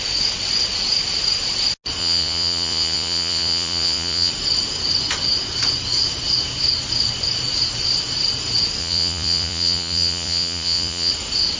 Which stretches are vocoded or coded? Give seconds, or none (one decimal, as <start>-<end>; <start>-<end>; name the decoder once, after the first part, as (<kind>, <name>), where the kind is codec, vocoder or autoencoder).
2.0-4.3 (vocoder, Vocos); 8.8-11.1

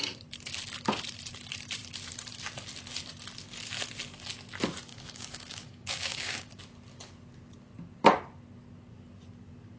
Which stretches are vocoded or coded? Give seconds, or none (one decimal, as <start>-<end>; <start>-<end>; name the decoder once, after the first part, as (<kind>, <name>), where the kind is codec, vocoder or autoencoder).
4.9-6.5 (codec, DAC)